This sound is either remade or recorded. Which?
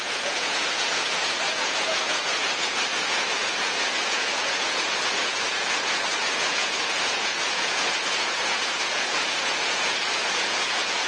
remade